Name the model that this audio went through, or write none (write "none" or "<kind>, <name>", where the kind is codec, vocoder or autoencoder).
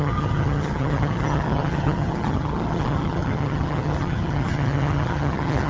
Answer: vocoder, HiFi-GAN